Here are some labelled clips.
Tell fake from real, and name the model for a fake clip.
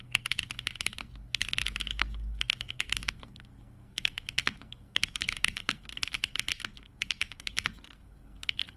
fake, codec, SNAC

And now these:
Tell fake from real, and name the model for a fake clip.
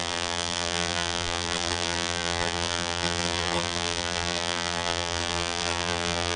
fake, vocoder, BigVGAN v2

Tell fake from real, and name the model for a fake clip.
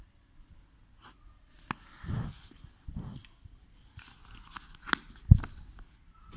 real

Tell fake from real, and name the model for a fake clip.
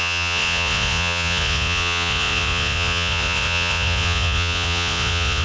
fake, vocoder, Vocos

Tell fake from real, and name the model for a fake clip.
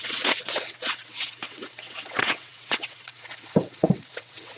fake, vocoder, WaveNeXt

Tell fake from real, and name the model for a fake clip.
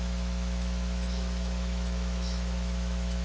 fake, autoencoder, DAC-VAE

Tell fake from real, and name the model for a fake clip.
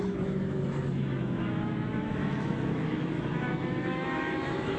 fake, autoencoder, DAC-VAE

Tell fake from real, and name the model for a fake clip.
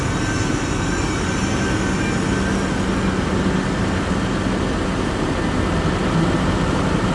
real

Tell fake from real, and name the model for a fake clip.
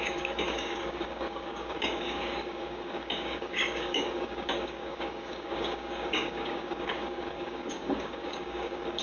fake, codec, DAC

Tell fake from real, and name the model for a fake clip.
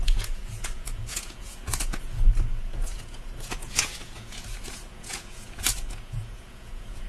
fake, vocoder, Vocos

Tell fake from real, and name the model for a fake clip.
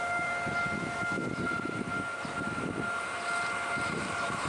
fake, vocoder, BigVGAN v2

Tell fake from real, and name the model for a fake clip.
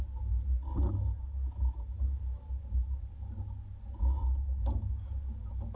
real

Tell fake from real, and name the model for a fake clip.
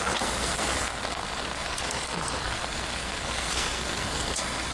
fake, codec, SNAC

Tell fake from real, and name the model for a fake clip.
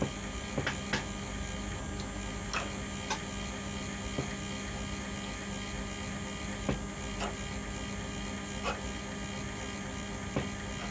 real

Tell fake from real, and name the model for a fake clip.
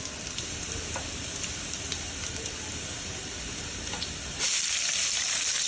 real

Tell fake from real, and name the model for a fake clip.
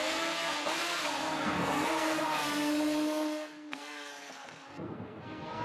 fake, codec, SNAC